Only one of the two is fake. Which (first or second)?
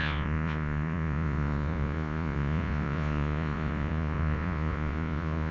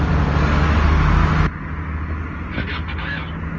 first